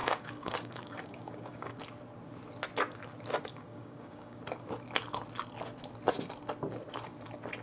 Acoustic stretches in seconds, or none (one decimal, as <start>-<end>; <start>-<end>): 1.8-3.5; 4.4-7.6